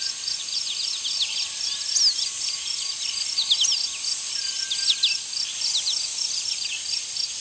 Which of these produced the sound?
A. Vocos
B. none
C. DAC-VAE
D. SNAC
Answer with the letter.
B